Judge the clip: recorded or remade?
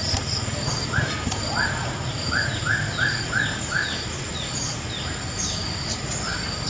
recorded